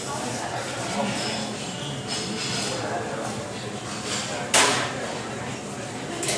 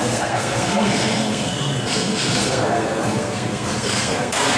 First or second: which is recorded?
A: first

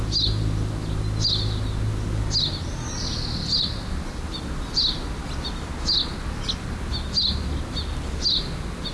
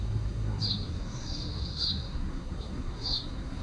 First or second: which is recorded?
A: first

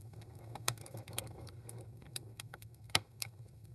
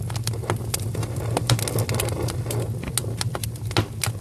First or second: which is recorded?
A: second